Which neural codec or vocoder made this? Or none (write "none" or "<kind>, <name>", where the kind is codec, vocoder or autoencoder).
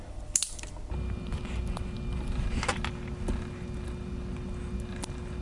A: none